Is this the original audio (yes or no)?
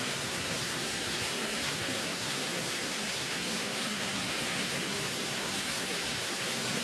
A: no